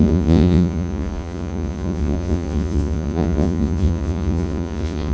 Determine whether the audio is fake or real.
fake